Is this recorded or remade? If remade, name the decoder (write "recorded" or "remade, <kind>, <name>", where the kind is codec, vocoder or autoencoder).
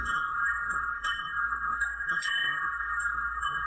remade, codec, SNAC